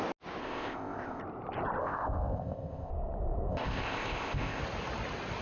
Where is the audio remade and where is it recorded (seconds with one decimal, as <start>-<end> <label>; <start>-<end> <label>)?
0.0-0.4 recorded; 0.4-1.2 remade; 1.2-1.8 recorded; 1.8-2.9 remade; 2.9-3.5 recorded; 3.5-4.6 remade; 4.6-5.4 recorded